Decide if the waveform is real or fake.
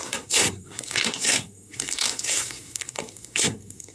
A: fake